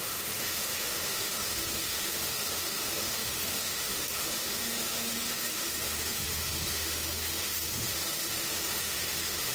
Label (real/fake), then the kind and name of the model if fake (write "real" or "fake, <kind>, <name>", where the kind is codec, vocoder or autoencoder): fake, autoencoder, DAC-VAE